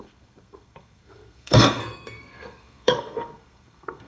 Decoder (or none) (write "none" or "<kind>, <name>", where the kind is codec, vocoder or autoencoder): codec, SNAC